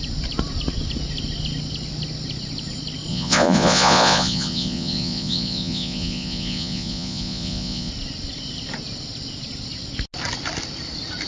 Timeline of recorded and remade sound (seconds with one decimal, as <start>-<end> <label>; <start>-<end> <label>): 0.0-3.1 recorded; 3.1-7.9 remade; 7.9-11.3 recorded

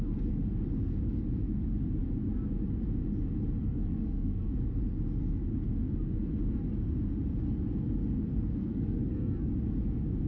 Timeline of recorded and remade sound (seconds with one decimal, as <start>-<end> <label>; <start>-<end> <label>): 0.0-3.6 recorded; 3.6-4.5 remade; 4.5-8.3 recorded; 8.3-9.5 remade; 9.5-10.3 recorded

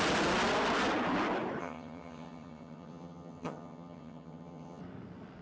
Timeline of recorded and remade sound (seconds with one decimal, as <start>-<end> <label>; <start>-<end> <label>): 0.0-1.6 recorded; 1.6-4.8 remade; 4.8-5.4 recorded

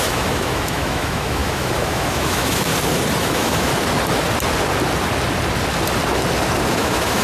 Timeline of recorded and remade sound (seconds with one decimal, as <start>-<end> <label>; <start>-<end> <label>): 0.0-2.7 remade; 2.7-3.2 recorded; 3.2-3.7 remade; 3.7-6.7 recorded; 6.7-7.2 remade

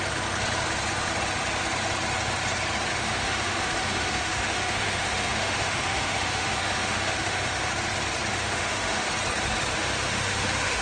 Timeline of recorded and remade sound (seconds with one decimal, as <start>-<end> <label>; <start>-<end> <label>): 0.0-2.9 recorded; 2.9-7.7 remade; 7.7-8.3 recorded; 8.3-9.1 remade; 9.1-9.7 recorded; 9.7-10.8 remade